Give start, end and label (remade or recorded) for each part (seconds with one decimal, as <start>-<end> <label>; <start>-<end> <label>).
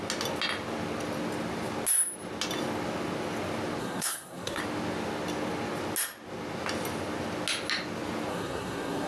0.0-3.8 recorded; 3.8-4.6 remade; 4.6-8.3 recorded; 8.3-9.1 remade